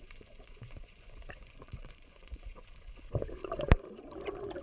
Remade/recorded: remade